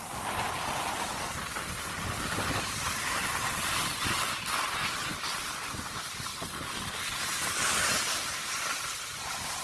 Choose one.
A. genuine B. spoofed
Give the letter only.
A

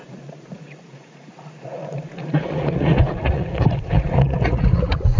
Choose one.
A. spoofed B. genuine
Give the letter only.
A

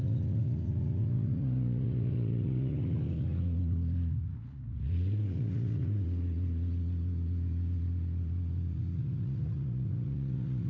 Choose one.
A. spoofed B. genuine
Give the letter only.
A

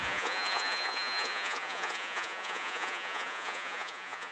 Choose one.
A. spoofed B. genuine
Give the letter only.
A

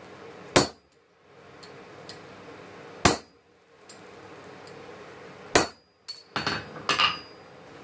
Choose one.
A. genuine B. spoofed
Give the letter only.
A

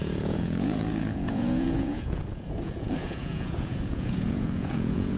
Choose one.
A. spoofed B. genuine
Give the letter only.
A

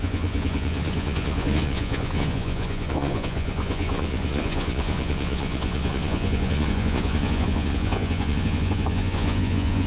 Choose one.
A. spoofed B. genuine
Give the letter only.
A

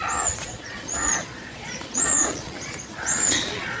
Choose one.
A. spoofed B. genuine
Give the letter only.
A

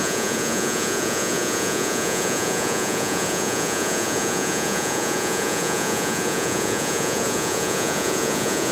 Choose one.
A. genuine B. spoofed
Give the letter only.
B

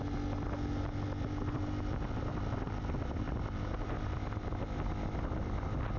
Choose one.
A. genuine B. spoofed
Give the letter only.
A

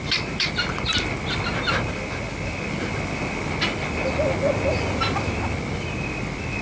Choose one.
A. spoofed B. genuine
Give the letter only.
B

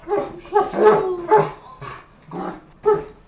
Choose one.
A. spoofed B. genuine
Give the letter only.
B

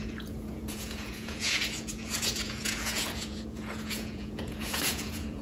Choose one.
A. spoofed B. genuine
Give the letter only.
A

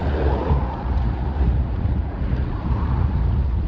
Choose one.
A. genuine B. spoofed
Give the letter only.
B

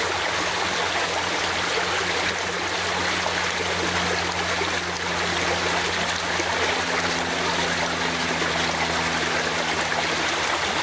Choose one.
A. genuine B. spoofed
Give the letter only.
A